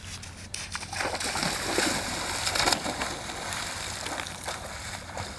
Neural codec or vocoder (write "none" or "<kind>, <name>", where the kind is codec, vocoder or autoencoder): none